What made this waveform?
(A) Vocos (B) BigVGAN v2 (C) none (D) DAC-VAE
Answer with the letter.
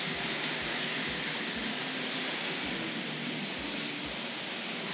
C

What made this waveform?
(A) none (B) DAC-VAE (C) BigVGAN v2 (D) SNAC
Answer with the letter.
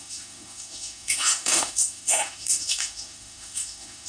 B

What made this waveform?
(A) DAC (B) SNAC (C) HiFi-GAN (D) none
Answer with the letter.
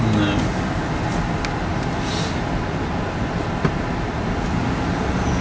D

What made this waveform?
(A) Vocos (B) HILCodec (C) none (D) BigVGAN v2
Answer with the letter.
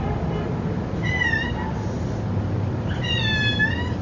C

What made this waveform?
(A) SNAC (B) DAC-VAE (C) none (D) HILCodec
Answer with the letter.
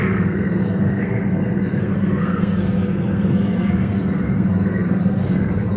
A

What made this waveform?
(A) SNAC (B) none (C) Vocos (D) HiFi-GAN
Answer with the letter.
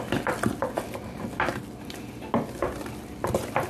B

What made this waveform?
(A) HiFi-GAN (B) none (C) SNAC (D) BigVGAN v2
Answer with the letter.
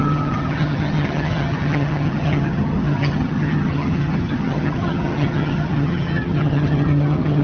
A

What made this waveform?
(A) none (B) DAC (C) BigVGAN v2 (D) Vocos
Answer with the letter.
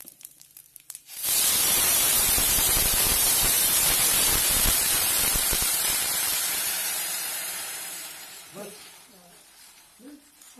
C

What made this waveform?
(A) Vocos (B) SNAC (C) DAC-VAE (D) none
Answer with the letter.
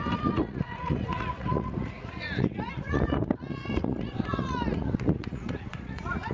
A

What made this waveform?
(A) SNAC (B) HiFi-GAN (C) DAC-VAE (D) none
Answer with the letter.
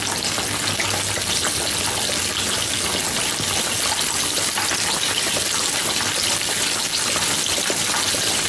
D